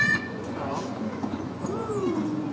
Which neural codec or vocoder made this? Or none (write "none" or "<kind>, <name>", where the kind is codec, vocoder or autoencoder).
vocoder, Vocos